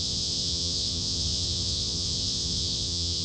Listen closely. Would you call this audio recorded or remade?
remade